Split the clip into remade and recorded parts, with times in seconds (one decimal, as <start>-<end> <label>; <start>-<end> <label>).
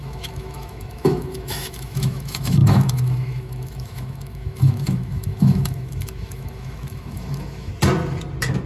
0.0-7.7 remade; 7.7-8.7 recorded